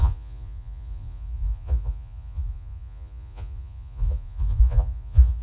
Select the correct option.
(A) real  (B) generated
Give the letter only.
B